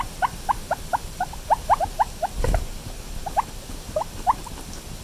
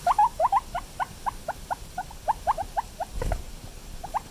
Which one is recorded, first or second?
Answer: first